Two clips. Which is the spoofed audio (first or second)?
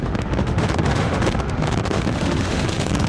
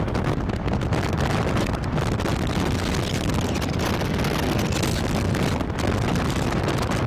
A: first